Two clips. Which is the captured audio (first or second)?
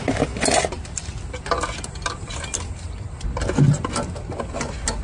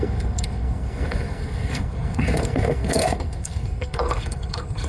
first